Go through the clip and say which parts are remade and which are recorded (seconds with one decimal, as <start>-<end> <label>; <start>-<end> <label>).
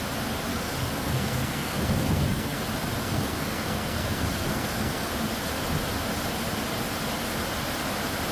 0.0-0.5 recorded; 0.5-2.6 remade; 2.6-3.0 recorded; 3.0-5.1 remade; 5.1-8.3 recorded